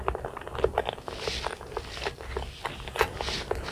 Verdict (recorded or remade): recorded